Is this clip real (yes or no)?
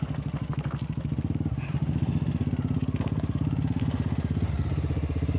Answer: yes